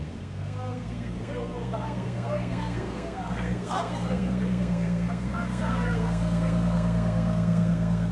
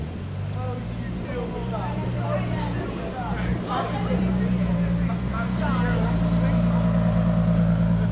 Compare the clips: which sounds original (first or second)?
second